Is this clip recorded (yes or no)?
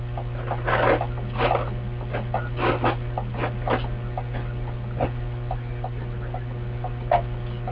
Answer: yes